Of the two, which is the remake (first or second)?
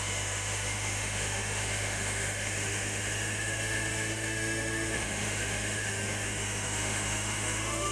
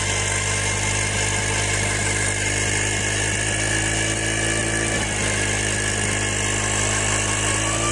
first